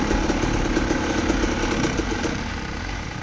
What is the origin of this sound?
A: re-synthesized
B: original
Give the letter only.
B